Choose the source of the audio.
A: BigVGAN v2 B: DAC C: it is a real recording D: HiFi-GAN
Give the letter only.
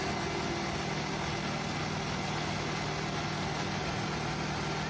C